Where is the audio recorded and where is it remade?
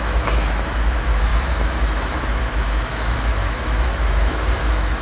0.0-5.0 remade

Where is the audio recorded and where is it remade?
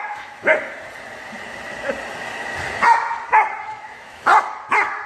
0.0-0.5 remade; 0.5-3.6 recorded; 3.6-4.3 remade; 4.3-5.1 recorded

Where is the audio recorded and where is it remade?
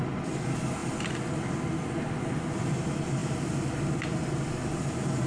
0.0-5.3 recorded